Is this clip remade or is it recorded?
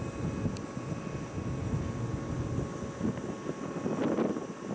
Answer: recorded